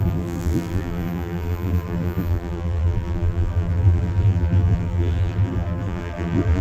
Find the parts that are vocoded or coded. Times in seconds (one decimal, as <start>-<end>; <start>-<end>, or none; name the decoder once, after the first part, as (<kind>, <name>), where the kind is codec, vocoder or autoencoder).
0.0-6.6 (vocoder, BigVGAN v2)